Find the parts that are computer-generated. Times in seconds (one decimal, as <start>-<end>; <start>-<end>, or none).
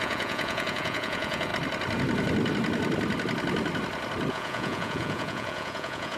0.0-1.5; 4.3-6.2